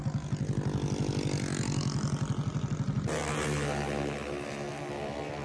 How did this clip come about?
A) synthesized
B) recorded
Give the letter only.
B